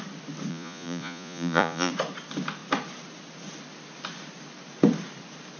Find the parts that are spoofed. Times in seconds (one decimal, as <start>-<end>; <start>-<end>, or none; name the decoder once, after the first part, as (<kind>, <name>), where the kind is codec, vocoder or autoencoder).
0.5-1.9 (vocoder, Vocos)